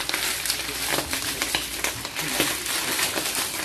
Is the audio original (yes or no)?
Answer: no